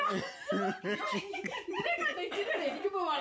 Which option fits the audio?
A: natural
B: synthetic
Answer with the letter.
A